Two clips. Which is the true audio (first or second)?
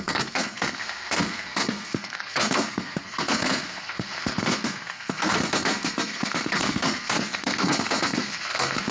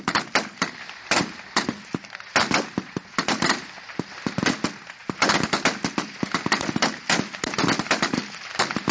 second